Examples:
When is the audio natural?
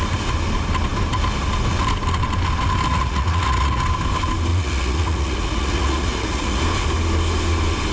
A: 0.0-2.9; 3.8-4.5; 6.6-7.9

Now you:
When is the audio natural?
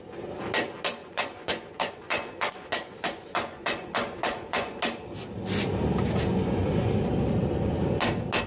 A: 0.0-1.0; 4.8-6.3; 6.9-8.5